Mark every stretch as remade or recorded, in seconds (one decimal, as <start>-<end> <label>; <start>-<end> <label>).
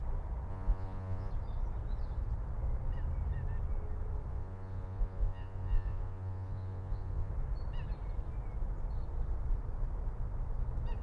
0.0-0.5 recorded; 0.5-1.3 remade; 1.3-4.3 recorded; 4.3-7.3 remade; 7.3-11.0 recorded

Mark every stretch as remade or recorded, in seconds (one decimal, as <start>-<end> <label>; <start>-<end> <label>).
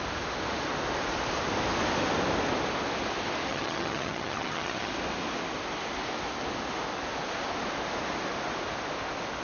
0.0-3.5 recorded; 3.5-4.9 remade; 4.9-9.4 recorded